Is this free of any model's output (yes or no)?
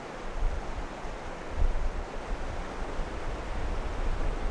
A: yes